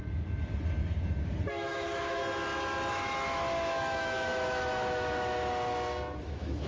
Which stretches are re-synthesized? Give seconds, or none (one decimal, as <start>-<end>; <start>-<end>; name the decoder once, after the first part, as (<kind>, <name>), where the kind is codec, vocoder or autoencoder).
1.5-2.2 (autoencoder, DAC-VAE); 2.9-5.5; 6.2-6.7